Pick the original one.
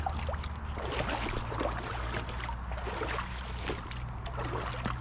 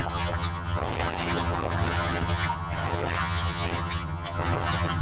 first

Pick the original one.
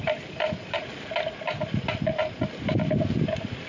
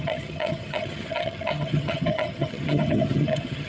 first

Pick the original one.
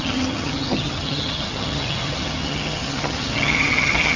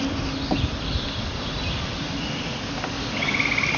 second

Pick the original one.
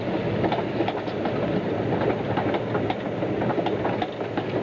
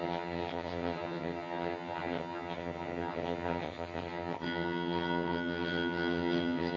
first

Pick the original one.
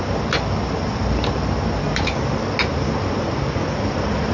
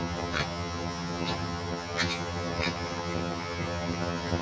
first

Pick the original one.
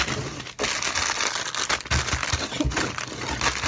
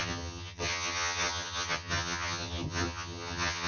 first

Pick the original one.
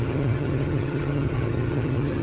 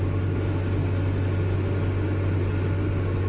second